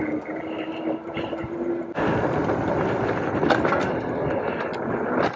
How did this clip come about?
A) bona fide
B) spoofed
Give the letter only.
A